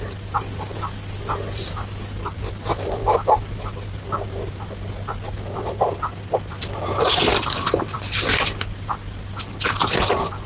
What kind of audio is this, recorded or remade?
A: recorded